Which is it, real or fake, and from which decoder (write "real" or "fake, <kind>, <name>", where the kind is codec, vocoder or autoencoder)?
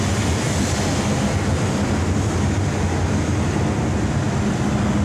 real